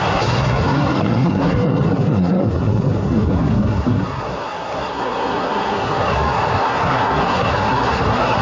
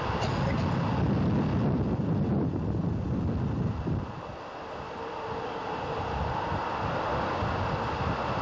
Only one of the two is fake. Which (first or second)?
first